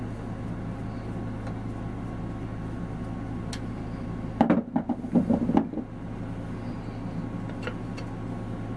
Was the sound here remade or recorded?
recorded